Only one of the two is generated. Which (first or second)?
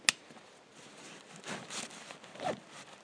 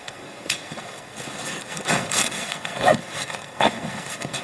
second